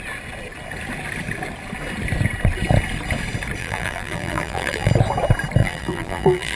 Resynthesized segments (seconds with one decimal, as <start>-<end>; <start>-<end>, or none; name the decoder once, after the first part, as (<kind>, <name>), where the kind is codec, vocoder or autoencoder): 3.6-4.9 (vocoder, BigVGAN v2); 5.6-6.6